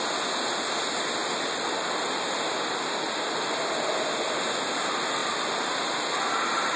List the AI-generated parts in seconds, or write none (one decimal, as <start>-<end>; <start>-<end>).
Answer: none